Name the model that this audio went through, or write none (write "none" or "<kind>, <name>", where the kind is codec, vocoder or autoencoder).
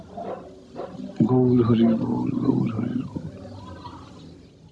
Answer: none